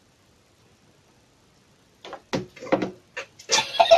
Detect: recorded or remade recorded